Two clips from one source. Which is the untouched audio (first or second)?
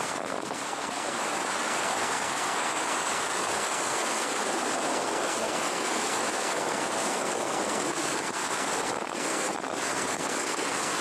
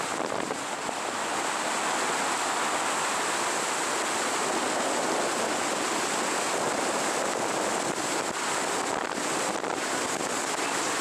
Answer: second